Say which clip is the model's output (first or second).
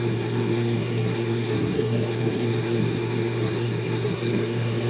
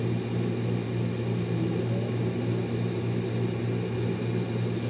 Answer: first